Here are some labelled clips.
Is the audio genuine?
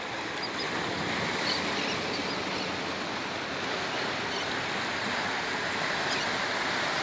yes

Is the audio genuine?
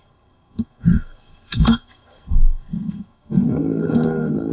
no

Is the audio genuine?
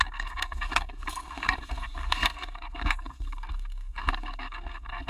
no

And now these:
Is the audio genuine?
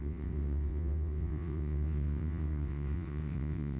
no